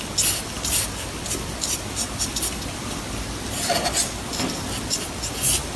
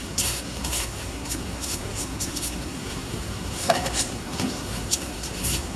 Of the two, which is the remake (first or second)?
second